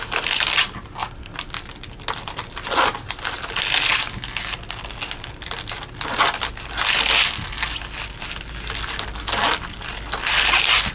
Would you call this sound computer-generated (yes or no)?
no